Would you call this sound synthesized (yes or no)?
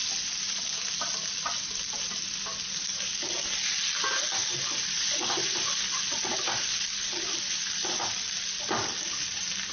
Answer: no